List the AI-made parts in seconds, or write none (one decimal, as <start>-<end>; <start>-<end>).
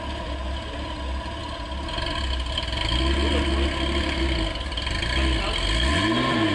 none